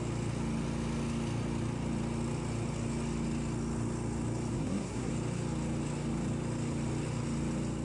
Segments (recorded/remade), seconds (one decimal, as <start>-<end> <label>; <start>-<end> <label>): 0.0-4.5 recorded; 4.5-5.1 remade; 5.1-7.8 recorded